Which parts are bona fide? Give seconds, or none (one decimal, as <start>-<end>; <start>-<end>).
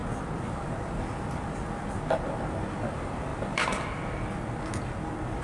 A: 0.0-3.3; 3.9-5.4